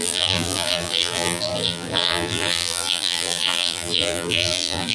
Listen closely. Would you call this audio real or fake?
fake